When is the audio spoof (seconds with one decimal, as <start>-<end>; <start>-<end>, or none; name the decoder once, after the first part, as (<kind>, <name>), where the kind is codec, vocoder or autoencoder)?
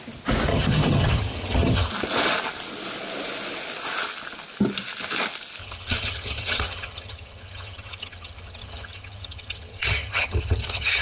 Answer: 0.5-1.9 (vocoder, HiFi-GAN); 5.6-11.0